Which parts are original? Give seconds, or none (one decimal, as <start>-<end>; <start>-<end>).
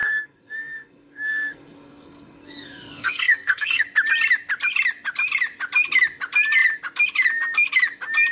3.8-8.3